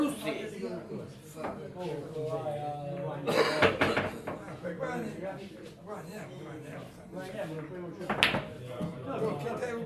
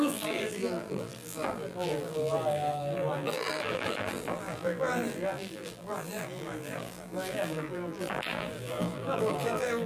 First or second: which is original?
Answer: first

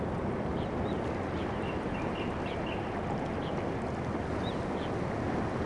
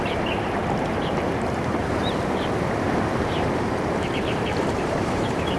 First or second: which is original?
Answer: first